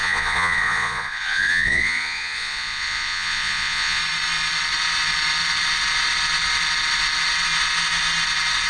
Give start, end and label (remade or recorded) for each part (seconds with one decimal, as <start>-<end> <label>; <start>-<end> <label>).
0.0-4.0 remade; 4.0-8.7 recorded